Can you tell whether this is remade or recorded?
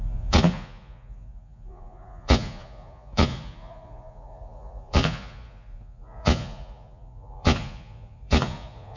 remade